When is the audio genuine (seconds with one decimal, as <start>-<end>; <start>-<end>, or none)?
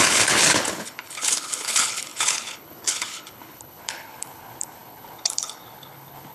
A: none